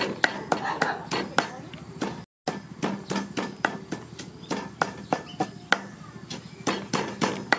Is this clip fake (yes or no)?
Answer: no